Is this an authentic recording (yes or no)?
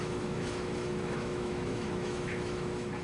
no